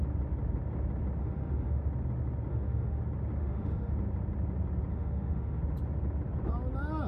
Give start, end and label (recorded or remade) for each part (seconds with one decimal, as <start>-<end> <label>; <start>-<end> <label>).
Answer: 0.0-1.2 recorded; 1.2-1.8 remade; 1.8-2.5 recorded; 2.5-3.0 remade; 3.0-3.4 recorded; 3.4-3.9 remade; 3.9-4.9 recorded; 4.9-5.6 remade; 5.6-7.1 recorded